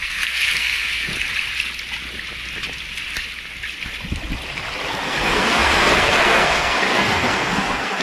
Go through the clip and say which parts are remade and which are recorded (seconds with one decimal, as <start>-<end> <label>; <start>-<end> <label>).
0.0-1.1 remade; 1.1-4.9 recorded; 4.9-8.0 remade